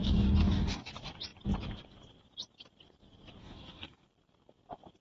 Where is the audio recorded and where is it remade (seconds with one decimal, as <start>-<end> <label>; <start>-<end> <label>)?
0.0-0.9 remade; 0.9-3.4 recorded; 3.4-4.0 remade; 4.0-5.0 recorded